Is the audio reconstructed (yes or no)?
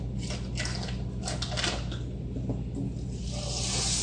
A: no